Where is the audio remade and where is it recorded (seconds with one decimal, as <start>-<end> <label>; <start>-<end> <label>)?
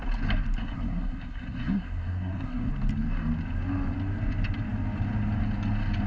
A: 0.0-0.6 recorded; 0.6-2.7 remade; 2.7-6.1 recorded